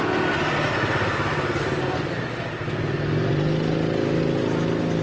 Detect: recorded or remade recorded